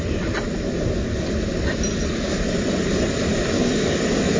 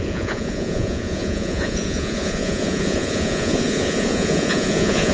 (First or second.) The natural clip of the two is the first